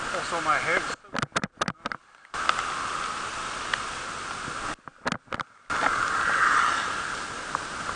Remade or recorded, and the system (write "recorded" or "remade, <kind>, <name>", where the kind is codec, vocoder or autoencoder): recorded